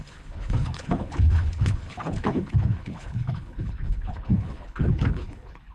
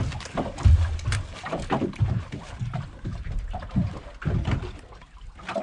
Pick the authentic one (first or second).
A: second